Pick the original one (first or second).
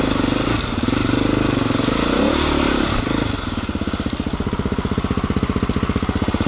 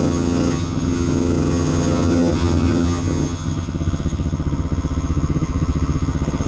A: first